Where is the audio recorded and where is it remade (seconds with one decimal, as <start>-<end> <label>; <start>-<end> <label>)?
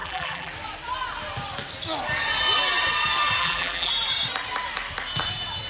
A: 0.0-0.5 remade; 0.5-3.4 recorded; 3.4-3.9 remade; 3.9-5.7 recorded